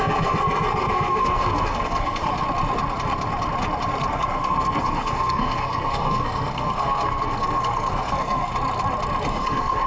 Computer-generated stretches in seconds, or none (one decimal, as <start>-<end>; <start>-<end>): 0.0-2.2; 4.1-8.5; 9.3-9.9